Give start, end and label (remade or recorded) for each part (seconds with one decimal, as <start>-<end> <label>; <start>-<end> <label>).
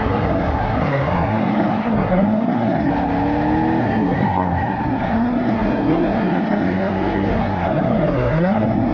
0.0-2.9 remade; 2.9-3.8 recorded; 3.8-8.9 remade